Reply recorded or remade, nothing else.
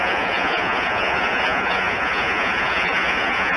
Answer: remade